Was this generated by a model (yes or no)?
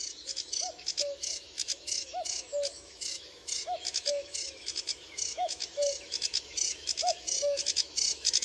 yes